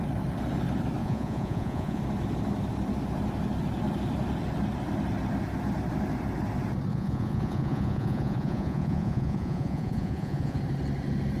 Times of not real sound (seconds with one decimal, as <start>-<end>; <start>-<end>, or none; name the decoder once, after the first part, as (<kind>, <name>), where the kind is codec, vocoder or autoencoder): 1.0-2.0 (vocoder, Vocos); 6.9-10.6